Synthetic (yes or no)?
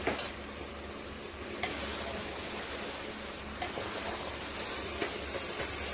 no